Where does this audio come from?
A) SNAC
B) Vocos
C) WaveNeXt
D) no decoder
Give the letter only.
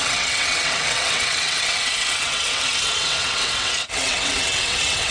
C